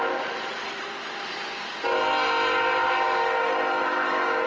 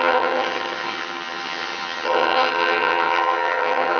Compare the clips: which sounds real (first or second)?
first